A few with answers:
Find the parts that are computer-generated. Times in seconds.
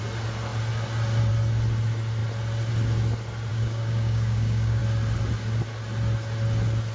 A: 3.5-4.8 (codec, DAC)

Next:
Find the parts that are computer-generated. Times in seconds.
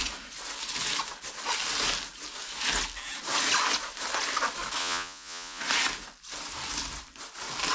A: 4.8-5.6 (vocoder, Vocos)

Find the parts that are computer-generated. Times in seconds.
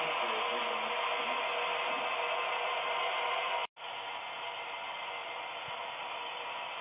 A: 5.2-6.8 (vocoder, BigVGAN v2)